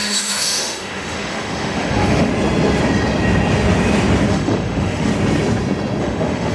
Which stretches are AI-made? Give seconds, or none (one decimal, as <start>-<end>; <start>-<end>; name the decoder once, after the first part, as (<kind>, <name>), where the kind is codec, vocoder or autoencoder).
0.0-2.3 (autoencoder, DAC-VAE); 4.3-5.1; 6.0-6.5